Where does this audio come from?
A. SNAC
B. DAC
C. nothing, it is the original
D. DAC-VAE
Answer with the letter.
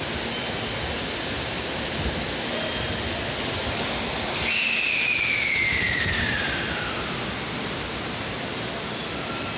C